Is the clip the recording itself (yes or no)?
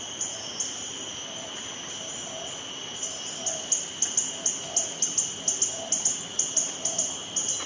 yes